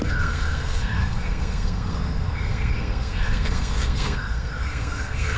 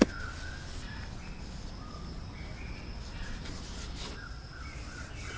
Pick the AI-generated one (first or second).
first